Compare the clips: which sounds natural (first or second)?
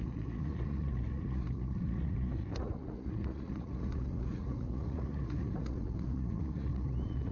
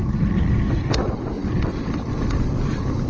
second